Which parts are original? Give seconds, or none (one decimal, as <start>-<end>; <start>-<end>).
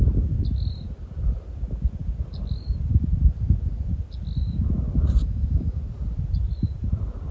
0.0-5.2; 5.8-7.3